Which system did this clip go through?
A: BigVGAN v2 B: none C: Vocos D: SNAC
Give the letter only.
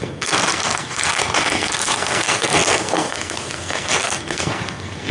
D